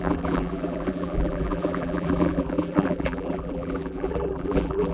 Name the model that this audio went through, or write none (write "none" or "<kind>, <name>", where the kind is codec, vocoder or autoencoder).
vocoder, BigVGAN v2